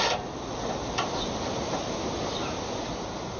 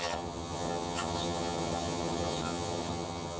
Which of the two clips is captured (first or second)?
first